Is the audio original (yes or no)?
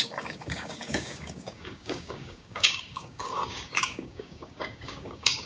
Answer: no